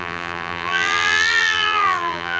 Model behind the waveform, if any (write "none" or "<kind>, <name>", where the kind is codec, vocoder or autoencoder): vocoder, BigVGAN v2